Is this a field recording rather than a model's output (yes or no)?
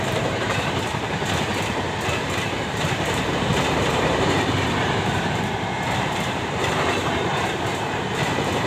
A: no